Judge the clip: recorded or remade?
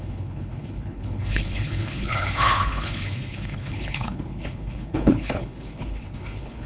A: remade